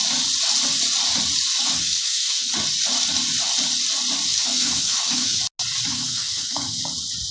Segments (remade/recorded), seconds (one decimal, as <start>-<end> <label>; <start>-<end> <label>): 0.0-1.8 recorded; 1.8-2.5 remade; 2.5-4.3 recorded; 4.3-5.4 remade; 5.4-5.9 recorded; 5.9-6.8 remade; 6.8-7.3 recorded